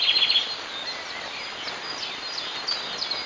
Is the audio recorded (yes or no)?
yes